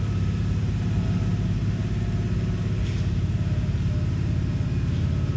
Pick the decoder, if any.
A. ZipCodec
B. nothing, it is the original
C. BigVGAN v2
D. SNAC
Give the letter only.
B